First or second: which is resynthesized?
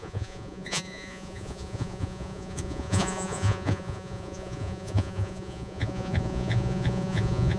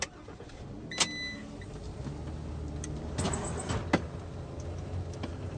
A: first